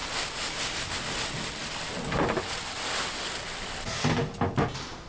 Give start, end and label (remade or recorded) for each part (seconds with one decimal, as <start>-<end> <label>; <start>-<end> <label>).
0.0-5.1 recorded